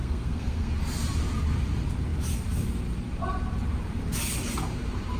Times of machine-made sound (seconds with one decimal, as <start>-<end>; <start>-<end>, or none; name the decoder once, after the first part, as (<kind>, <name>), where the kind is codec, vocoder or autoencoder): 0.0-0.7 (codec, SNAC)